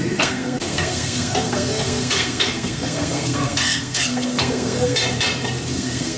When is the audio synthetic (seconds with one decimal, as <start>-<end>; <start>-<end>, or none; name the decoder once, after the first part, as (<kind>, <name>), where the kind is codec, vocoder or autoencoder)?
0.0-5.0 (codec, SNAC); 5.7-6.2